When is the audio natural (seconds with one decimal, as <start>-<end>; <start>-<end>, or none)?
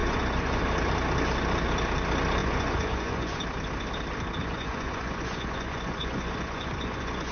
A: 0.6-2.4; 3.4-4.4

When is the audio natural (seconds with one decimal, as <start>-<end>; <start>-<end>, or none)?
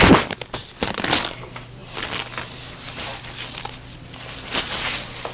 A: 0.0-5.3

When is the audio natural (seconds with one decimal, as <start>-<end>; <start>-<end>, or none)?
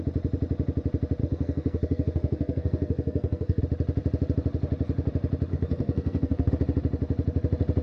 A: 0.0-1.2; 3.6-5.5; 6.5-7.8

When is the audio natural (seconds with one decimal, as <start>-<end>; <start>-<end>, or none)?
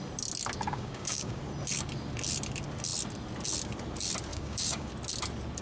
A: 0.0-0.7; 1.4-4.3; 4.9-5.6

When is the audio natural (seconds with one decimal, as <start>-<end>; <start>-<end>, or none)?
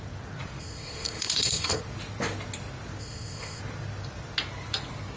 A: 0.0-0.6; 1.8-3.0; 3.6-5.2